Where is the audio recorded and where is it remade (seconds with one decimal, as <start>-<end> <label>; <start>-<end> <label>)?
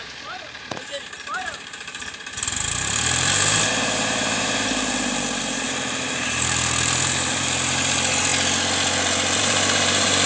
0.0-8.3 remade; 8.3-9.4 recorded; 9.4-10.3 remade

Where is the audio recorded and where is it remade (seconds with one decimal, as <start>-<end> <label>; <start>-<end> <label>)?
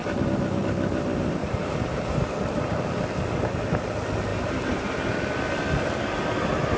0.0-1.4 recorded; 1.4-2.8 remade; 2.8-4.3 recorded; 4.3-5.1 remade; 5.1-6.8 recorded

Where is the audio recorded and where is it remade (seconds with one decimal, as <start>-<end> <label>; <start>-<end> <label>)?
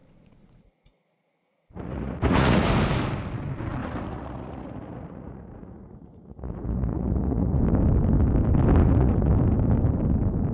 0.0-2.7 remade; 2.7-3.8 recorded; 3.8-7.6 remade; 7.6-8.8 recorded; 8.8-9.3 remade; 9.3-10.5 recorded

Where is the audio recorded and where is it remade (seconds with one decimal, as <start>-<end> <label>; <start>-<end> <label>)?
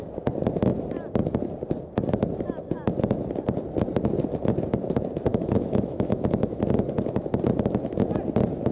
0.0-5.3 recorded; 5.3-6.6 remade; 6.6-8.7 recorded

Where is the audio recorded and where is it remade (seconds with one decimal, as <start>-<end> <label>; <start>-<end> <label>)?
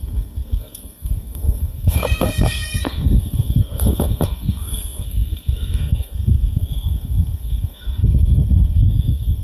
0.0-9.4 remade